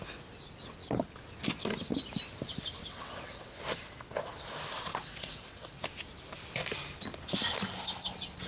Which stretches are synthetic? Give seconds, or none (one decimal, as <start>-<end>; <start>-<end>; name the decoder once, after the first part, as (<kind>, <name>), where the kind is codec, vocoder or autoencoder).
2.8-3.6 (vocoder, WaveNeXt); 4.9-5.8